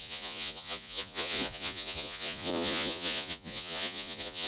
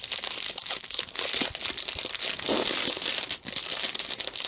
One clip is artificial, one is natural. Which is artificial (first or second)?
first